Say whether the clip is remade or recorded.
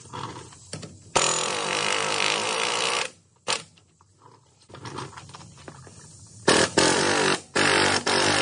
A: recorded